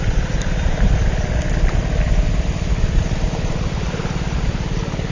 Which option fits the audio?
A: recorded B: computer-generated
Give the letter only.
A